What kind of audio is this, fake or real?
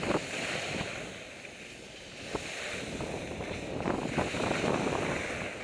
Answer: real